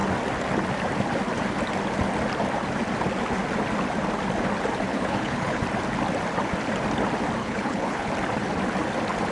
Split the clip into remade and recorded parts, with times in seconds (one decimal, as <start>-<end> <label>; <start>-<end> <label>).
0.0-4.9 recorded; 4.9-5.6 remade; 5.6-7.4 recorded; 7.4-8.1 remade; 8.1-9.3 recorded